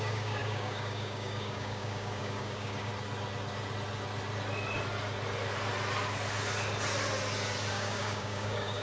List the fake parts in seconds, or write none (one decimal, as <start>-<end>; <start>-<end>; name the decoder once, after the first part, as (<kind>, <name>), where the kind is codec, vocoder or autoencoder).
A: 0.0-2.9 (codec, DAC); 7.7-8.8